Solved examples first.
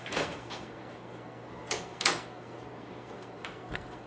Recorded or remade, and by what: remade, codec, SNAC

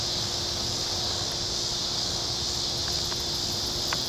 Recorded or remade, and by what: recorded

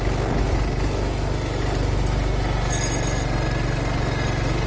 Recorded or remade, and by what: recorded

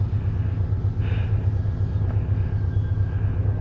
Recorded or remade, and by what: recorded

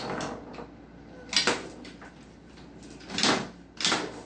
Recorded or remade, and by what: recorded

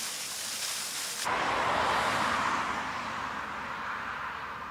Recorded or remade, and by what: recorded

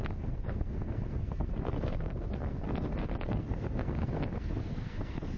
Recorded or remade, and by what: remade, codec, SNAC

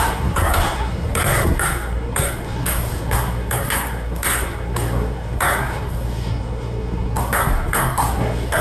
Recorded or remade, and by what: remade, codec, SNAC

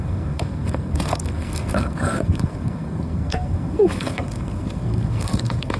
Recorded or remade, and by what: remade, codec, SNAC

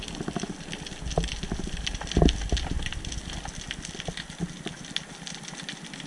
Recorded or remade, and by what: recorded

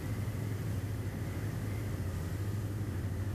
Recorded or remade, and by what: recorded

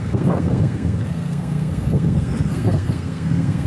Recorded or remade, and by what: remade, codec, SNAC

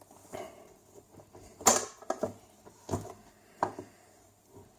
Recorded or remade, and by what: recorded